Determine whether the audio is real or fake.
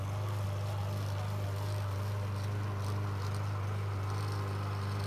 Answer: real